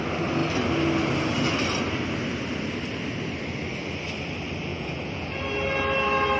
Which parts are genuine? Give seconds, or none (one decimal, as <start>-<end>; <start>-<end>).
0.0-4.7; 5.4-6.4

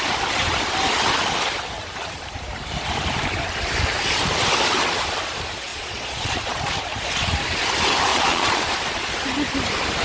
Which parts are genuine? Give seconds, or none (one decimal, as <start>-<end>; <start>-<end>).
0.0-5.7; 6.6-8.1; 9.1-10.0

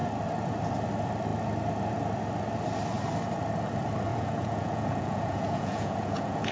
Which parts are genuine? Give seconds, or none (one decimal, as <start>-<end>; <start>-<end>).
0.0-4.1

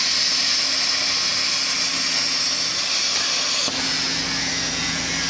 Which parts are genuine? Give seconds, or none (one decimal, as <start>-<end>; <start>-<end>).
0.0-5.3

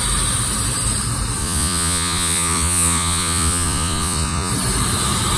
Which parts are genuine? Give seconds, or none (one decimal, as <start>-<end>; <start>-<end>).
0.0-1.4; 4.5-5.4

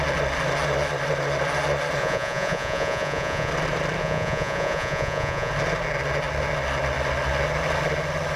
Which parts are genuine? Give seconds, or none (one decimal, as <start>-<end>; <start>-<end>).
0.0-2.0; 3.5-4.0; 5.5-8.4

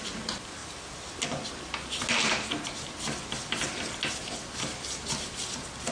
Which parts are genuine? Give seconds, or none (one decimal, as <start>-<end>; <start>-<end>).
0.0-5.9